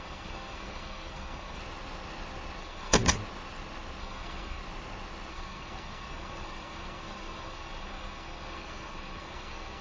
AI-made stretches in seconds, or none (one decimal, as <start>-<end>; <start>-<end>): 0.0-1.6; 2.6-3.0; 4.0-4.6; 5.3-9.8